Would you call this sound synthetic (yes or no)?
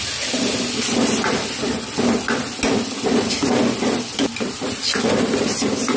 no